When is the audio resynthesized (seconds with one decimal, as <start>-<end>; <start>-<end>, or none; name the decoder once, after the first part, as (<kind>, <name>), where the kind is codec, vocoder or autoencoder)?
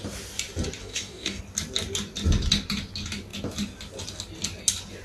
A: 0.8-1.4 (codec, DAC)